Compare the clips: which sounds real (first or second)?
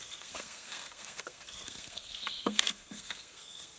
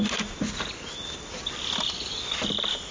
second